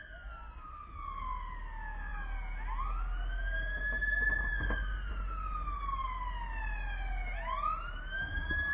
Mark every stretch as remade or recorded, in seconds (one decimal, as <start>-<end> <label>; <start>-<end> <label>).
0.0-8.7 recorded